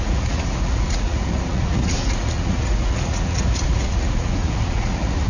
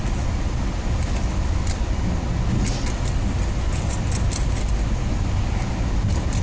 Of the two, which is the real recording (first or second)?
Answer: second